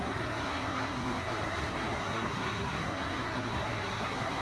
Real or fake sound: fake